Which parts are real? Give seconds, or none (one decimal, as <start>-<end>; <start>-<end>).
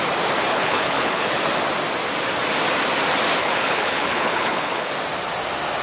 0.0-0.5; 1.3-3.4; 4.9-5.8